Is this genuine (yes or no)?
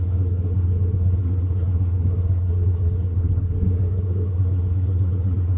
no